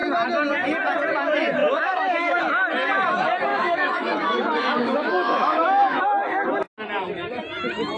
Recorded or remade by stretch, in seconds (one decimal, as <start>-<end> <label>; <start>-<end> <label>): 0.0-1.6 recorded; 1.6-2.4 remade; 2.4-3.5 recorded; 3.5-6.0 remade; 6.0-8.0 recorded